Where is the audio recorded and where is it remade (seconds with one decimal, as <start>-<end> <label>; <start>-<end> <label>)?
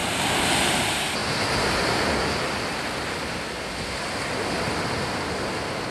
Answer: 0.0-5.9 recorded